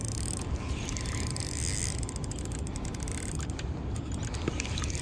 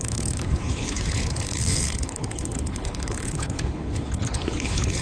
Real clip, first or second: first